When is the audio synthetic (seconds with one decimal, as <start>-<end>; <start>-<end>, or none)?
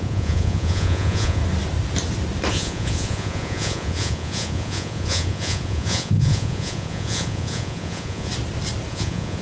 0.0-1.4; 2.5-8.3; 8.9-9.4